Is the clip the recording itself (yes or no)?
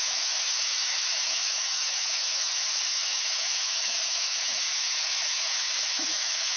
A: no